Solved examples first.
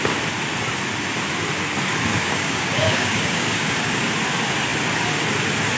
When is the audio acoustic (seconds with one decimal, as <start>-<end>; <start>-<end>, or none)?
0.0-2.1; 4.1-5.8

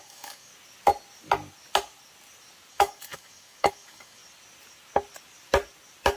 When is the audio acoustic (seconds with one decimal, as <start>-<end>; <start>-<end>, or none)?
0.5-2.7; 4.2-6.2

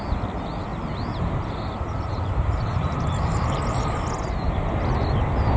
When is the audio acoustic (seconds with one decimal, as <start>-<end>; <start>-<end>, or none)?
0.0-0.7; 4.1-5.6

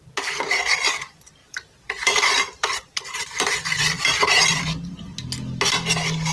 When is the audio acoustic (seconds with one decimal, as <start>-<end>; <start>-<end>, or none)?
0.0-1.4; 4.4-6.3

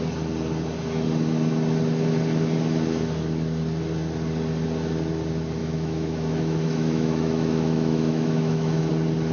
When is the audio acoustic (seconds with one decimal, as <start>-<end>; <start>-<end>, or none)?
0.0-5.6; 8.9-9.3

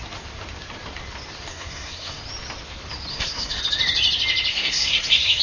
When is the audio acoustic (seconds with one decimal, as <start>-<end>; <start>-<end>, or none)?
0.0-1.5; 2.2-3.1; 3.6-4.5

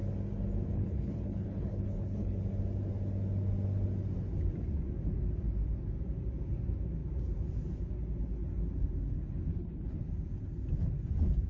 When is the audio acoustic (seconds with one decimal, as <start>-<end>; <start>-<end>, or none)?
0.0-0.7; 2.4-9.5; 10.0-11.5